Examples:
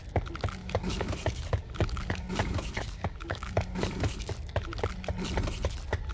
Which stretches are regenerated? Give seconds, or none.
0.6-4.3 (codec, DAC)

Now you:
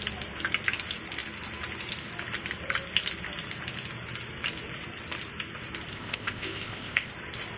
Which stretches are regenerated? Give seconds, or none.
5.9-7.1 (codec, ZipCodec)

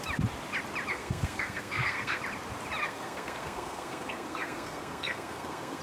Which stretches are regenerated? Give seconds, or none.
0.9-2.2 (codec, SNAC); 2.8-5.8

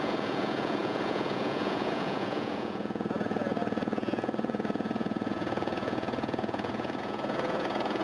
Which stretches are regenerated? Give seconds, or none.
0.0-8.0 (vocoder, Vocos)

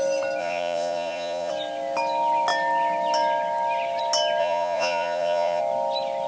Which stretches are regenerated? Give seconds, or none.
0.4-1.5 (vocoder, Vocos); 4.4-5.6

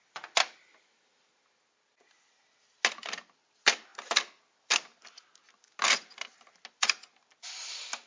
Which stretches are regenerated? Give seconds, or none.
none

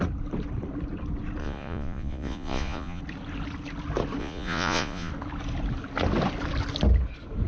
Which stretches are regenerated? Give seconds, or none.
1.4-3.0 (vocoder, Vocos); 4.2-5.1

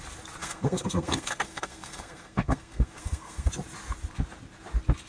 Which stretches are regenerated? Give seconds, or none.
0.4-3.5 (codec, SNAC)